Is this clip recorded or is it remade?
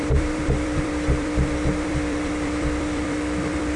remade